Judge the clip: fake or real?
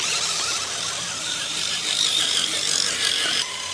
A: fake